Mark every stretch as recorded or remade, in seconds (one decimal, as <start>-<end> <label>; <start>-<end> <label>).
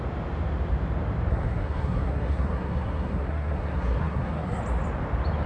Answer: 0.0-1.3 recorded; 1.3-4.6 remade; 4.6-5.5 recorded